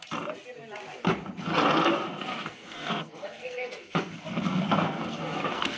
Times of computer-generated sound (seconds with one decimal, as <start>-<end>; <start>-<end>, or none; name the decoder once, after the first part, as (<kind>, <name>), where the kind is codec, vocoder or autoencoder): 2.1-5.8 (codec, SNAC)